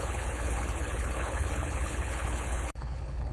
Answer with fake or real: fake